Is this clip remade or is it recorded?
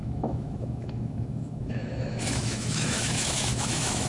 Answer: remade